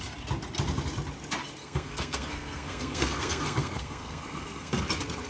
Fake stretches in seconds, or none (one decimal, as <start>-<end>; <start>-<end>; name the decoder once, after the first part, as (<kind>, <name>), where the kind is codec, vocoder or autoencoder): 1.6-4.8 (codec, SNAC)